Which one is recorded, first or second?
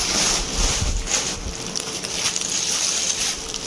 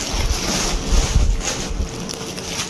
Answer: second